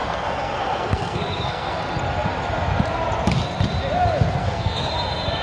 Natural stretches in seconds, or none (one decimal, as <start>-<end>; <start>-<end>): 1.8-4.4; 4.9-5.4